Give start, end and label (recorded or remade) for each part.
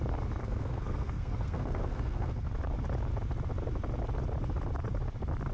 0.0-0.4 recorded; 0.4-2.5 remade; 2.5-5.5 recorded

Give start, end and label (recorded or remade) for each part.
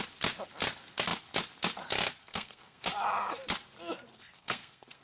0.0-2.2 recorded; 2.2-2.9 remade; 2.9-4.1 recorded; 4.1-5.0 remade